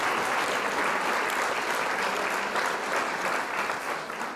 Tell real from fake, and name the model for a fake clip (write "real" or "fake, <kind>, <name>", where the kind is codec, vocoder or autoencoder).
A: real